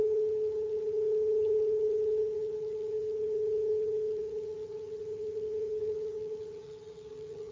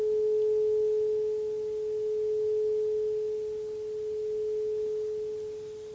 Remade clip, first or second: first